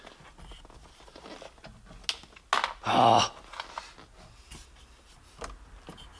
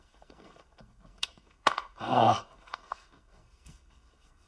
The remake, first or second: second